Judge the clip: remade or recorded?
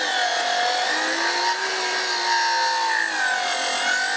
recorded